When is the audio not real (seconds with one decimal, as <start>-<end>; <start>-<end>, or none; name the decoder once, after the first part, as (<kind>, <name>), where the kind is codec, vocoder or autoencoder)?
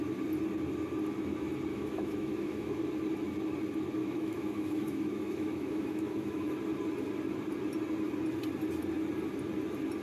1.7-2.8 (autoencoder, DAC-VAE); 4.0-6.6